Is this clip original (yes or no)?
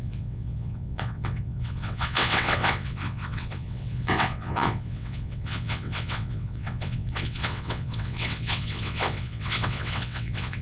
no